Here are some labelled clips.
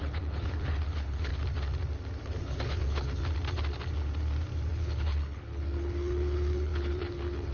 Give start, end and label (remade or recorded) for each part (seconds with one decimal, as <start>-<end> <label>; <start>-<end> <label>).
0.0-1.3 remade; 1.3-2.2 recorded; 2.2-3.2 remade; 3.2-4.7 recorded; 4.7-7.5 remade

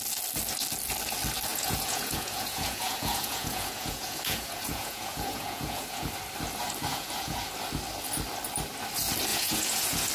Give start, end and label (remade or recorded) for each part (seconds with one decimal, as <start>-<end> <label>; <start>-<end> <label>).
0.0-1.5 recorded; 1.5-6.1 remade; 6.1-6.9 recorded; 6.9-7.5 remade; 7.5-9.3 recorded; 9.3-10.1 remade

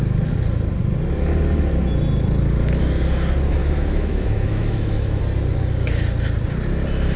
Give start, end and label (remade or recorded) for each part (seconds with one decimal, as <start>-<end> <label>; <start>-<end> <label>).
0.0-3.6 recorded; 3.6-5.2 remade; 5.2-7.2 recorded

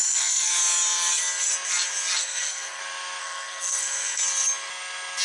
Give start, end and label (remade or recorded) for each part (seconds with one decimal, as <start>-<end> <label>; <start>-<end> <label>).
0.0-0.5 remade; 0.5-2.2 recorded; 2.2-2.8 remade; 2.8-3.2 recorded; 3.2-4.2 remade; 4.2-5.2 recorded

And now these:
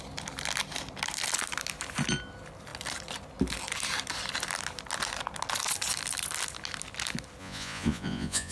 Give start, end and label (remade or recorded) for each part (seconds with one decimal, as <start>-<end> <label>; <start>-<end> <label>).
0.0-7.4 recorded; 7.4-8.5 remade

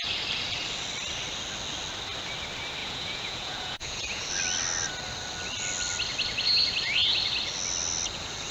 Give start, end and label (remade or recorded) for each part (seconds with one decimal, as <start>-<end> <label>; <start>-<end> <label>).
0.0-2.8 recorded; 2.8-4.3 remade; 4.3-8.5 recorded

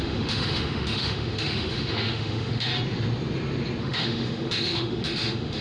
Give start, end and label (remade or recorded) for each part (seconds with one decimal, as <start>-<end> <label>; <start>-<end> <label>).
0.0-2.7 remade; 2.7-3.8 recorded; 3.8-5.6 remade

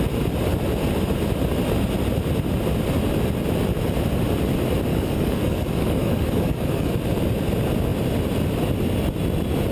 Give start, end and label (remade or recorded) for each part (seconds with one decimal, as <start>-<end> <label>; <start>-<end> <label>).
0.0-4.9 recorded; 4.9-6.9 remade; 6.9-9.7 recorded